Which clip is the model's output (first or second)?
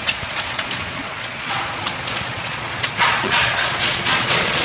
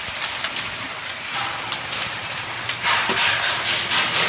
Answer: first